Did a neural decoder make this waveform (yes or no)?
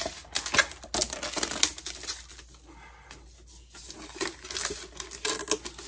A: no